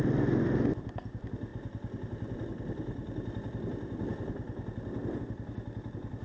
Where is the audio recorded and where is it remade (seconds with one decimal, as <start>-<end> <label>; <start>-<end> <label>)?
0.0-6.2 recorded